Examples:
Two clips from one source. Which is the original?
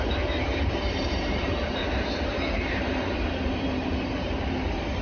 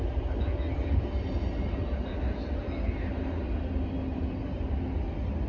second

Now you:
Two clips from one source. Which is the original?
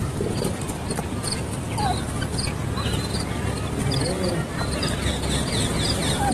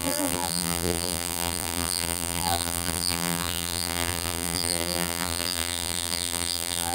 first